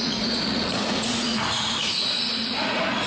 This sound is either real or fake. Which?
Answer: fake